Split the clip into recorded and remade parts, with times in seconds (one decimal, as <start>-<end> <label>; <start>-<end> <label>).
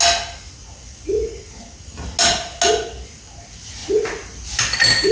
0.0-5.1 recorded